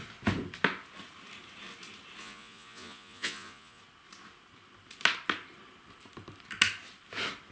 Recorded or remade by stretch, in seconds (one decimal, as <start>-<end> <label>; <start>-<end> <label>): 0.0-2.2 recorded; 2.2-3.8 remade; 3.8-7.5 recorded